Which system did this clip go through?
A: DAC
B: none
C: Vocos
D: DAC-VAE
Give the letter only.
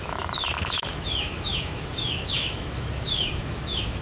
D